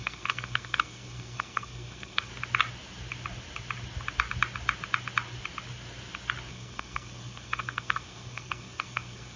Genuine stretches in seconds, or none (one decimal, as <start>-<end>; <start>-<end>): 2.3-6.5